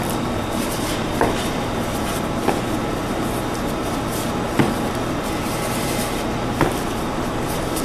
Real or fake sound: real